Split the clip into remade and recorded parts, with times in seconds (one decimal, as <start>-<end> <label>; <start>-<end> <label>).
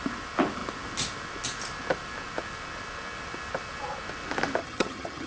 0.0-4.6 recorded; 4.6-5.3 remade